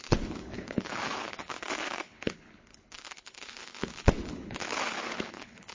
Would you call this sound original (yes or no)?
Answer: no